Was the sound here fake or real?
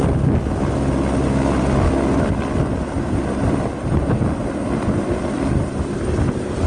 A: real